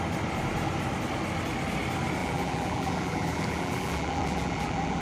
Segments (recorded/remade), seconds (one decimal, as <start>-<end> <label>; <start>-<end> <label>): 0.0-2.2 recorded; 2.2-5.0 remade